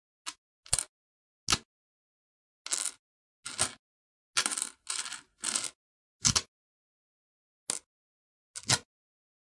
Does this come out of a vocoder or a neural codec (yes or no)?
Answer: no